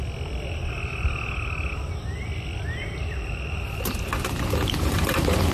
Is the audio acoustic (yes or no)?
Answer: yes